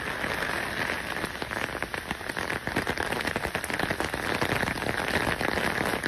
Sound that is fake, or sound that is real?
real